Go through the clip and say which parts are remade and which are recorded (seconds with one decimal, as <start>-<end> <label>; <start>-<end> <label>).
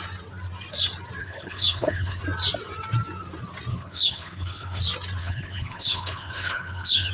0.0-1.2 recorded; 1.2-2.2 remade; 2.2-3.7 recorded; 3.7-4.8 remade; 4.8-5.2 recorded; 5.2-7.1 remade